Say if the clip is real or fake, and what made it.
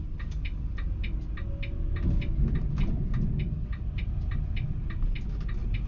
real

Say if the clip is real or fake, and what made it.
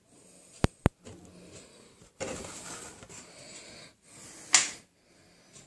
real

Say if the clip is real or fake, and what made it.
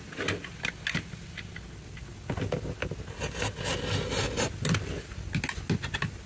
real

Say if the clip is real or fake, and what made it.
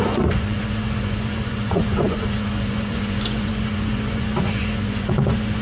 fake, vocoder, Vocos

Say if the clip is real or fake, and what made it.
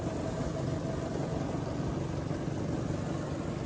real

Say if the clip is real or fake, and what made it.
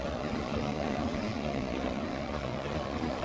fake, vocoder, Vocos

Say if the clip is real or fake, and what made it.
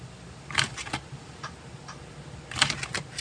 real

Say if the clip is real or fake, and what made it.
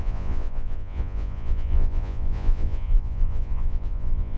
fake, vocoder, Vocos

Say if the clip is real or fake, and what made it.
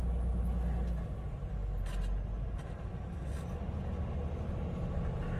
real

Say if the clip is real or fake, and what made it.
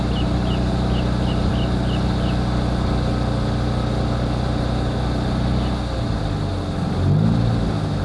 real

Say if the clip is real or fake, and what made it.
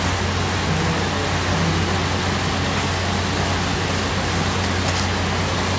real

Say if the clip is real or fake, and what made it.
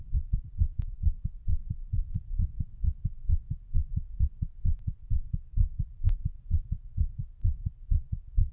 fake, vocoder, Vocos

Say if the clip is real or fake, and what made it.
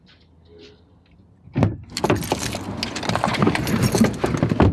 real